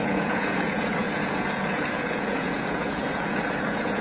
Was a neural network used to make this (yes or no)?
yes